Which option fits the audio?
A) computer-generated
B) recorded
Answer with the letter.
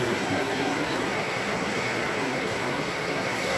A